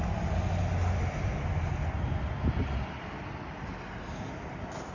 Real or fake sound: real